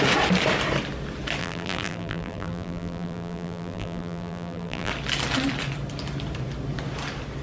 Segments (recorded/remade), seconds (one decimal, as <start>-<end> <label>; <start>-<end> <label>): 0.0-1.4 recorded; 1.4-4.9 remade; 4.9-7.4 recorded